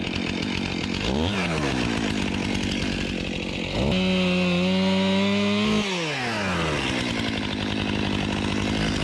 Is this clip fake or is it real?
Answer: real